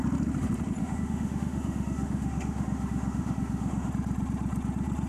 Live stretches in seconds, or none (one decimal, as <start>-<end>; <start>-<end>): 0.0-0.8; 3.9-5.1